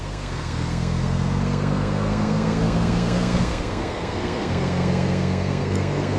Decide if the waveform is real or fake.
fake